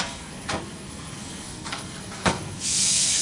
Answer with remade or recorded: remade